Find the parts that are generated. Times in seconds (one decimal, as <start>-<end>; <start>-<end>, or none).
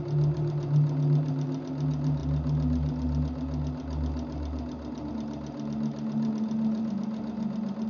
none